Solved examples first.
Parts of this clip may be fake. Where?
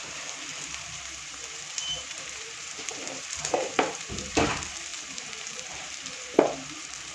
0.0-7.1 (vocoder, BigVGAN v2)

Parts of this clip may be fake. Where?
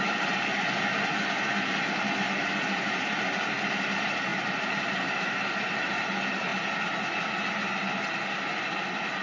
0.0-0.9 (vocoder, BigVGAN v2); 1.9-6.5; 8.4-9.2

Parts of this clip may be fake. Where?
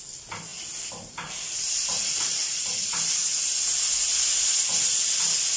0.5-3.9 (vocoder, BigVGAN v2)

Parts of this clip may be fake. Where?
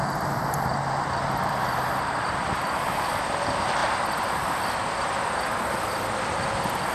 0.0-3.1 (vocoder, BigVGAN v2)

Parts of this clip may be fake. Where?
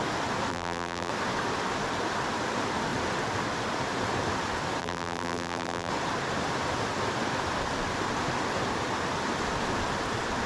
0.5-1.1 (vocoder, BigVGAN v2); 4.8-5.9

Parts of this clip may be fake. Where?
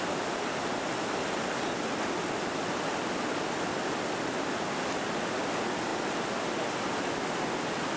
none